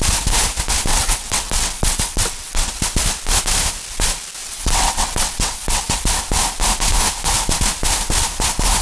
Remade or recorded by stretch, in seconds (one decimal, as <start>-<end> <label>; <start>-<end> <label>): 0.0-0.9 recorded; 0.9-2.7 remade; 2.7-4.4 recorded; 4.4-6.1 remade; 6.1-8.8 recorded